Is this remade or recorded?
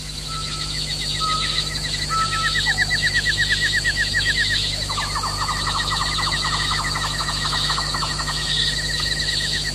remade